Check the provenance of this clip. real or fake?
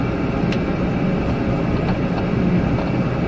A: real